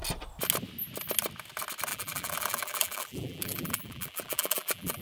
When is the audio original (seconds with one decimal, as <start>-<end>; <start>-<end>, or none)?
0.0-1.9